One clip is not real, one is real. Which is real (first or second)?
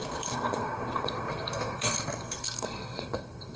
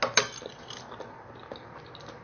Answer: second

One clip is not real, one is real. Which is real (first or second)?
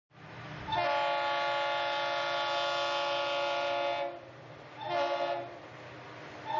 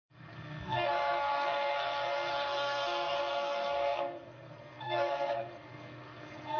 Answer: first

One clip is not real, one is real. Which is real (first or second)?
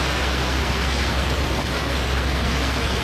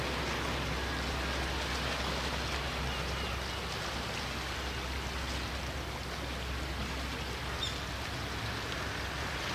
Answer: second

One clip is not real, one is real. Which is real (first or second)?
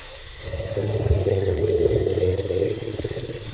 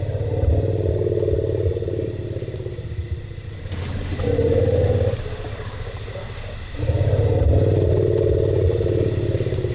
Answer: second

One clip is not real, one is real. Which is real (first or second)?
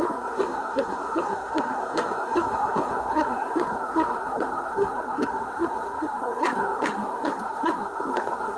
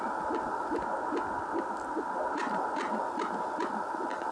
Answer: second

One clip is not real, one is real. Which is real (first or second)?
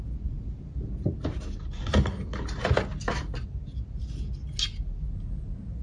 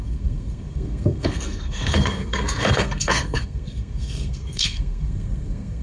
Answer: first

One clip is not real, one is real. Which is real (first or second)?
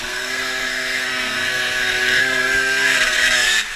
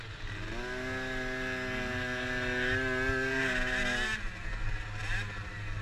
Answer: second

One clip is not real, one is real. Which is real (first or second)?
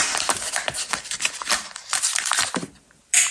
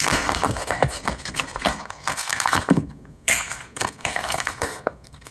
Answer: first